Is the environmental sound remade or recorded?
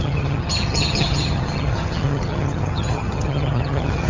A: remade